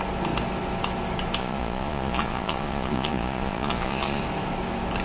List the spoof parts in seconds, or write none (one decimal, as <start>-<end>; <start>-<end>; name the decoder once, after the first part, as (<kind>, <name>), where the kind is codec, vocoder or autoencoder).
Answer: 1.4-4.2 (vocoder, Vocos)